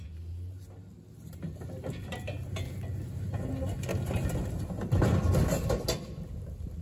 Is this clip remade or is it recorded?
recorded